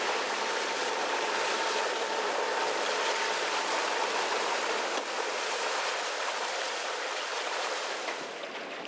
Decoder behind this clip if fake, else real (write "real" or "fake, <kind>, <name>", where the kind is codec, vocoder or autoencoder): fake, vocoder, BigVGAN v2